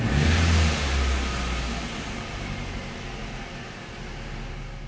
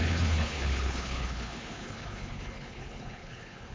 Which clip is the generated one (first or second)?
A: second